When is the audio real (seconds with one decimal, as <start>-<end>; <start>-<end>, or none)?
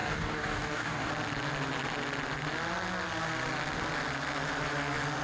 1.1-5.2